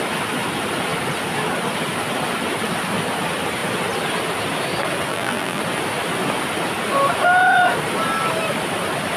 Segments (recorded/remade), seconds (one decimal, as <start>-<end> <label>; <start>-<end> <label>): 0.0-5.1 recorded; 5.1-5.6 remade; 5.6-9.2 recorded